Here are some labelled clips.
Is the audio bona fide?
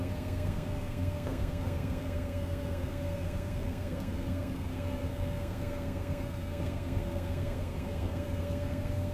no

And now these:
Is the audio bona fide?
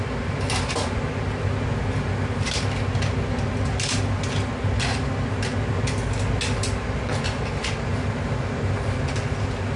yes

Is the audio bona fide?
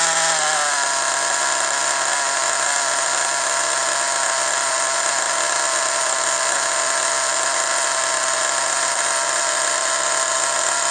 yes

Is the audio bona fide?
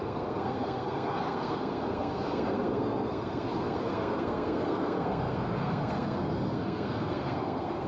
no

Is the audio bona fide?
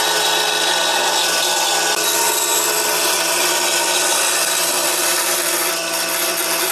yes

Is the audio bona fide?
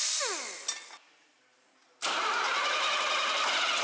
yes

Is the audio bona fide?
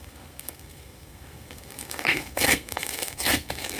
no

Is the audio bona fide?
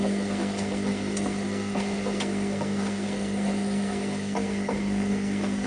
no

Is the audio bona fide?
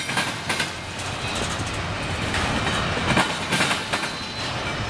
yes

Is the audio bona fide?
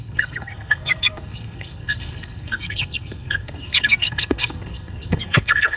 no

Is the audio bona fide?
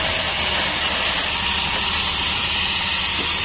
yes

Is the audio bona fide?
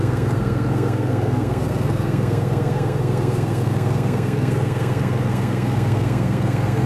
no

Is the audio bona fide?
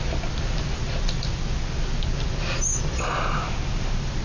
yes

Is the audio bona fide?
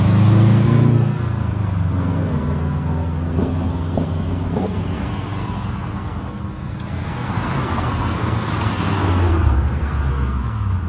no